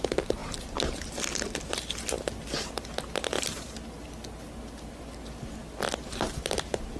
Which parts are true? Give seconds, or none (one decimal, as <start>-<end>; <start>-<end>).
0.0-7.0